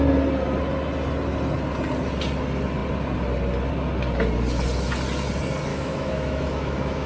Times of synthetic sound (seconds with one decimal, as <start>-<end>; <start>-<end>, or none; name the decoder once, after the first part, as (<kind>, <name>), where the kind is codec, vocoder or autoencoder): 5.7-7.1 (autoencoder, DAC-VAE)